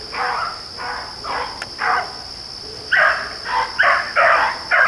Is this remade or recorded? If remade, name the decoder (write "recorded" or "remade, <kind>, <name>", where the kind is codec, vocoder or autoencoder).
recorded